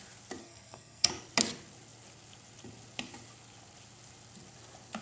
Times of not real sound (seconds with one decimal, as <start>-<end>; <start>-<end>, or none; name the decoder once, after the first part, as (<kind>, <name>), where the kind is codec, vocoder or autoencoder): 0.4-1.1 (codec, SNAC)